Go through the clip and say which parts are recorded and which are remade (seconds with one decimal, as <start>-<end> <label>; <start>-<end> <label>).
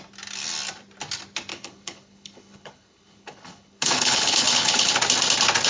0.0-1.5 recorded; 1.5-4.9 remade; 4.9-5.7 recorded